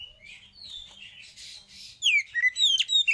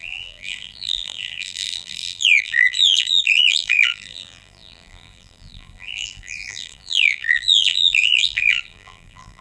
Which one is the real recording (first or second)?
first